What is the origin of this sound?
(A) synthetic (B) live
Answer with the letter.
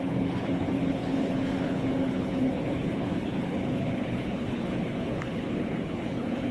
A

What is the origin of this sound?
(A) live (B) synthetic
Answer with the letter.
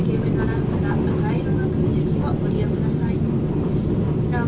A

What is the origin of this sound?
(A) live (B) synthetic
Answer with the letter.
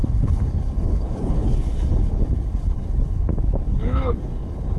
B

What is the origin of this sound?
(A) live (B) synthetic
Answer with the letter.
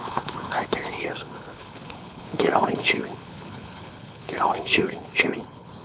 B